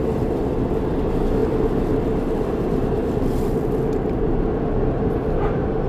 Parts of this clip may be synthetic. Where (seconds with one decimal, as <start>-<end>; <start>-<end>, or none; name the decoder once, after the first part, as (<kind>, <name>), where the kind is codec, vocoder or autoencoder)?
none